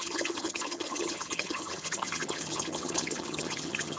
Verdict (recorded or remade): remade